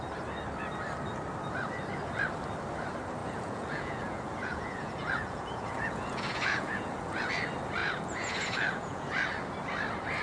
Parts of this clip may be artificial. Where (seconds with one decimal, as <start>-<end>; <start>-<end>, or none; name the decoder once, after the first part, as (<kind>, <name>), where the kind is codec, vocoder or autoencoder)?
3.2-7.3 (vocoder, Vocos); 7.8-9.0